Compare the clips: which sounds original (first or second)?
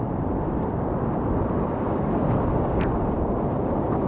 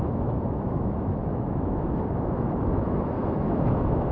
first